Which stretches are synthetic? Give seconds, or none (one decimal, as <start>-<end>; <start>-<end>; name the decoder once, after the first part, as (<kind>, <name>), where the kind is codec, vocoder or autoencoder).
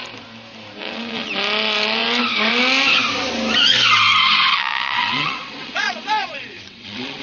0.8-1.3 (vocoder, WaveNeXt); 4.5-7.2